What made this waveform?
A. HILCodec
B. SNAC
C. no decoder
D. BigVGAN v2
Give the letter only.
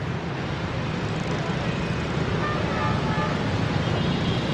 C